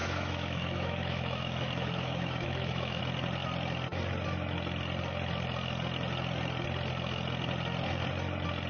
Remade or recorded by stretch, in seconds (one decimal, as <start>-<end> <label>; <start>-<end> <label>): 0.0-3.0 remade; 3.0-8.7 recorded